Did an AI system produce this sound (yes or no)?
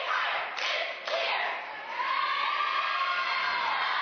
no